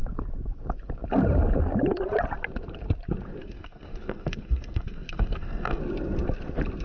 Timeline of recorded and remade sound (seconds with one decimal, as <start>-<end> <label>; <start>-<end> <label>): 0.0-3.4 recorded; 3.4-5.8 remade; 5.8-6.8 recorded

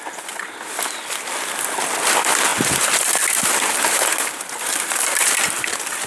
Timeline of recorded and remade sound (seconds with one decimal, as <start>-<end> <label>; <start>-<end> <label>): 0.0-6.1 recorded

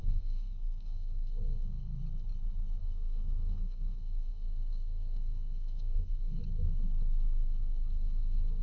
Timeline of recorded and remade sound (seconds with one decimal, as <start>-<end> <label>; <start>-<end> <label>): 0.0-2.0 remade; 2.0-2.8 recorded; 2.8-6.4 remade; 6.4-8.6 recorded